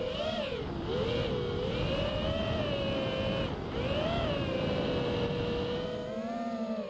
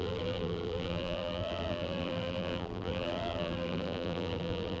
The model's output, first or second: second